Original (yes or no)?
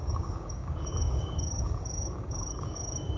no